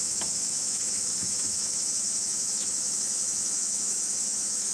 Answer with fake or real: fake